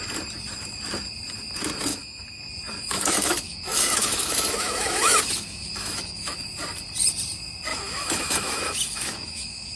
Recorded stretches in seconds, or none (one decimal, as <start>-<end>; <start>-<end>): 0.0-1.9; 2.4-2.8; 6.5-7.7